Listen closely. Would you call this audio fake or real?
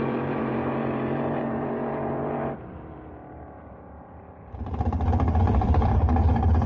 fake